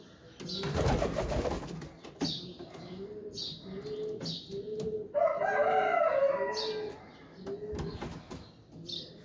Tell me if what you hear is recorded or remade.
recorded